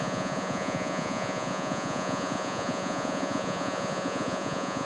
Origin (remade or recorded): remade